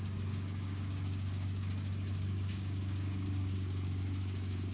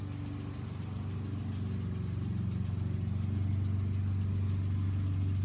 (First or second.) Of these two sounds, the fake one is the first